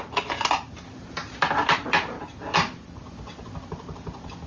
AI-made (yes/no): no